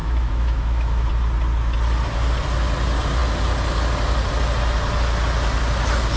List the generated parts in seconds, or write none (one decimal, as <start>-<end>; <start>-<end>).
0.0-1.1